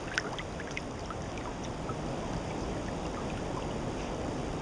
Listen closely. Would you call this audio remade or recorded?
recorded